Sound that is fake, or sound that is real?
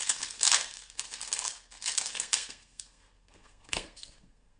fake